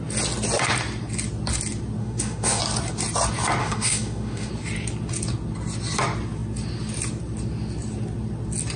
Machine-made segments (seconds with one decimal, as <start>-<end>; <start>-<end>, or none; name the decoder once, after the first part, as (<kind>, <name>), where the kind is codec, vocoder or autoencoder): 2.0-2.6 (autoencoder, DAC-VAE); 3.6-4.5